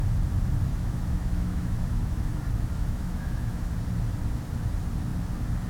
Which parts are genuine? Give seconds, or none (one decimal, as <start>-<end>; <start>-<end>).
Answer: 0.0-0.7; 2.4-2.8; 3.7-5.7